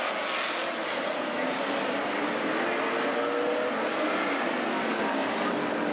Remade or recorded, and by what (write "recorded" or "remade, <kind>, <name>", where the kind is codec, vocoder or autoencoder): recorded